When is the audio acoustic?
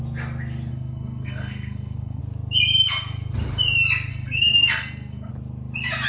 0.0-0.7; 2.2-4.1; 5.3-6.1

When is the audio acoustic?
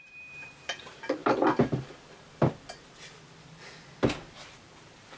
1.2-4.3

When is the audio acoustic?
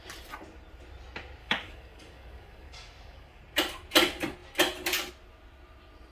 0.0-1.4; 3.4-6.1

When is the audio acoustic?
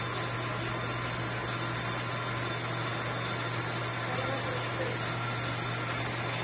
0.0-6.4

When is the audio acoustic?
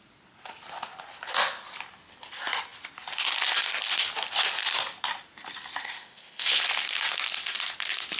0.0-5.8; 6.6-8.2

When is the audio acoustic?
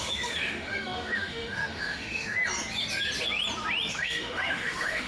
2.4-3.9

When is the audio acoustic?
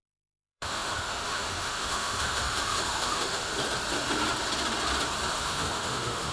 3.5-5.3